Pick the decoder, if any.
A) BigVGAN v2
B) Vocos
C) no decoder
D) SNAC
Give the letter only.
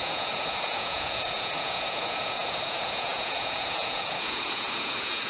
B